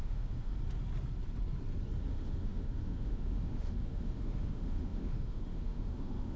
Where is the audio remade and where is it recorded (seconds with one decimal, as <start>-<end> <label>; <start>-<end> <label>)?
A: 0.0-0.5 remade; 0.5-2.1 recorded; 2.1-6.4 remade